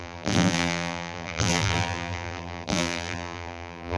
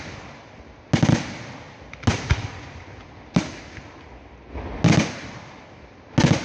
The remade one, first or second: first